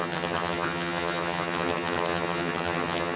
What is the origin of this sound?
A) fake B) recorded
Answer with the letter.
A